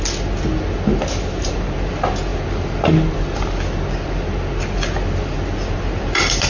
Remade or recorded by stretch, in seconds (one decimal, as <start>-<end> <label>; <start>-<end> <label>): 0.0-6.5 recorded